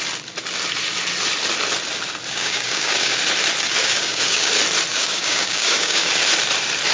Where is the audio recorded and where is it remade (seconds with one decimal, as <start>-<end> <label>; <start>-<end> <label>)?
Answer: 0.0-2.3 recorded; 2.3-3.2 remade; 3.2-3.8 recorded; 3.8-4.5 remade; 4.5-4.9 recorded; 4.9-6.1 remade; 6.1-6.9 recorded